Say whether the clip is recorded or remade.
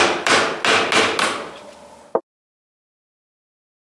recorded